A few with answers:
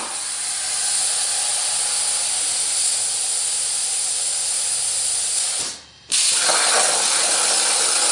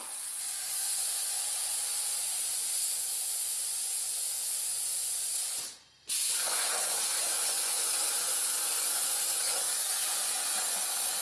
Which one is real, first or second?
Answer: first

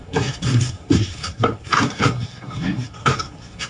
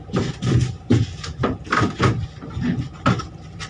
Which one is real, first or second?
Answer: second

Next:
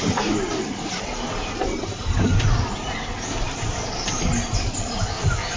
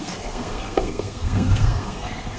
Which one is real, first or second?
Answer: first